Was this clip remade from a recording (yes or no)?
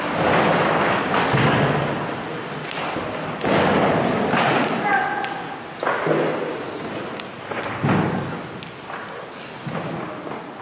no